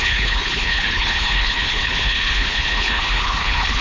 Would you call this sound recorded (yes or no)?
no